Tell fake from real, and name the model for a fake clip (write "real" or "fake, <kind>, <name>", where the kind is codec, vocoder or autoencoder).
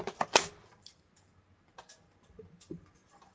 real